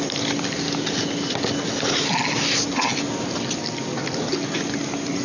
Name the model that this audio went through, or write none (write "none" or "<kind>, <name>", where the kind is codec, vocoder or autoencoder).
none